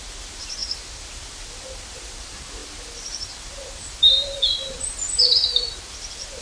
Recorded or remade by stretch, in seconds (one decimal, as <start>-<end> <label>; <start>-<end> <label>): 0.0-6.4 remade